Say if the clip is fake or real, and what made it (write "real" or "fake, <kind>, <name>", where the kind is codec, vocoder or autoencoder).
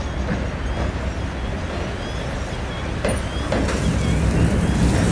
real